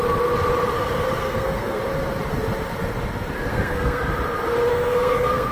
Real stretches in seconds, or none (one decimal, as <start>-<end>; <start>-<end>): 0.0-1.2; 1.8-3.5; 4.0-4.7